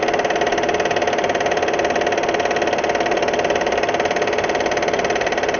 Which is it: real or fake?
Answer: real